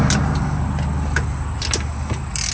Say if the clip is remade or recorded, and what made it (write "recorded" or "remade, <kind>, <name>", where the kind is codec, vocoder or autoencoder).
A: recorded